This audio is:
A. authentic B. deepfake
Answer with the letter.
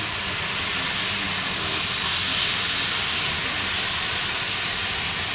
A